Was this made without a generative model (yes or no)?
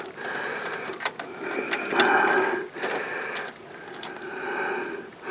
yes